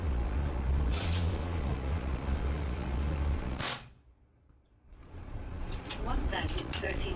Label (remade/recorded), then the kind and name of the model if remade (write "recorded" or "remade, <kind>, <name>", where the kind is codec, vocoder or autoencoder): remade, vocoder, Vocos